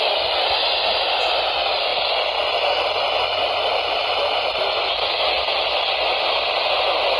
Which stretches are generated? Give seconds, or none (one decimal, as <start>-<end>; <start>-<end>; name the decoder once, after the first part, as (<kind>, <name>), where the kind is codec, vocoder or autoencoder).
none

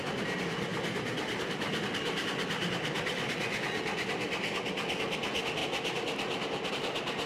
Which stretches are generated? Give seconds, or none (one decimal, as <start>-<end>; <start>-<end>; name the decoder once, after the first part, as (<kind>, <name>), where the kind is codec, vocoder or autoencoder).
none

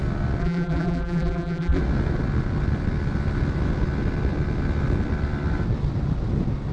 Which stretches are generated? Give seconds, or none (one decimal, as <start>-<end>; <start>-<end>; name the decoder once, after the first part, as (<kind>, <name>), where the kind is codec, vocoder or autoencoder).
0.4-1.8 (vocoder, BigVGAN v2)

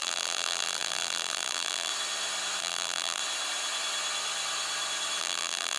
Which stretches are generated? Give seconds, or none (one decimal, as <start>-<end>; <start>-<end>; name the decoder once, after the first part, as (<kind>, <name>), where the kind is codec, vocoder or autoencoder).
0.0-1.9 (vocoder, BigVGAN v2); 2.6-3.2; 5.2-5.8

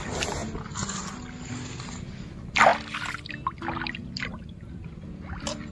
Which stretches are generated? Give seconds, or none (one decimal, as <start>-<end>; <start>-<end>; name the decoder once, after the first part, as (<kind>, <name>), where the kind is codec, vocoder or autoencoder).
0.0-0.4 (vocoder, BigVGAN v2); 2.0-2.7; 3.3-5.7

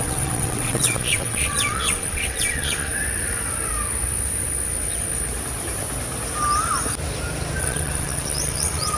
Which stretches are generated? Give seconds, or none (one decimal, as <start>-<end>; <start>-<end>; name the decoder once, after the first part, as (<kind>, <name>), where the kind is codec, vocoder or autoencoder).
0.0-2.9 (vocoder, WaveNeXt); 7.6-9.0

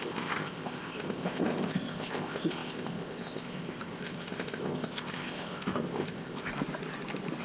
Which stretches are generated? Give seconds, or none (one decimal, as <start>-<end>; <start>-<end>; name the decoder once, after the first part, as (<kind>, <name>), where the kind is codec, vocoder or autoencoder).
0.0-6.5 (codec, ZipCodec)

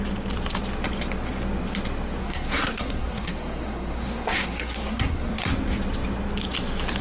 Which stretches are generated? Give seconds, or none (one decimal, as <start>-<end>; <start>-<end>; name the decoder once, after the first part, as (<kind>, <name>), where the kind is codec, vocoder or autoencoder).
2.2-5.5 (codec, SNAC)